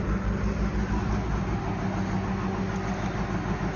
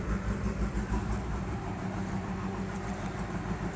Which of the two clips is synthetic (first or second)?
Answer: second